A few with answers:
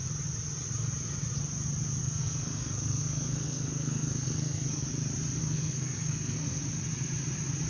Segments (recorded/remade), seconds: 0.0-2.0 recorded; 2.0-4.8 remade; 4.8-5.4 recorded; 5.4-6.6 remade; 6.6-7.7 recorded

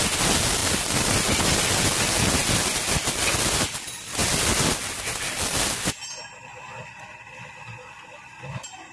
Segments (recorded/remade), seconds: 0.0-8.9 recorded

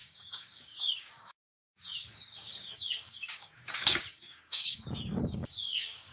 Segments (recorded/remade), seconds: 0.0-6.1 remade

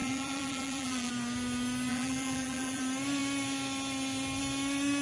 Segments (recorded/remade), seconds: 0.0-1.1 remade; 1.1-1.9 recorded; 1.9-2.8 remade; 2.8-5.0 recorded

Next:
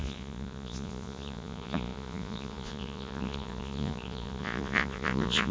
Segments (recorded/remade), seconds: 0.0-5.5 remade

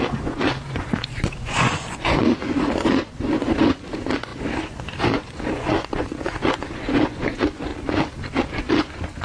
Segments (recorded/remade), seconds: 0.0-7.7 remade; 7.7-8.5 recorded; 8.5-9.2 remade

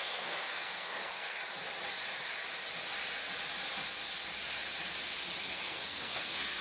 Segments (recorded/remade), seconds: 0.0-1.4 remade; 1.4-5.4 recorded; 5.4-6.6 remade

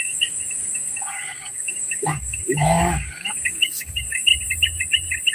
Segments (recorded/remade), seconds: 0.0-4.3 remade; 4.3-5.3 recorded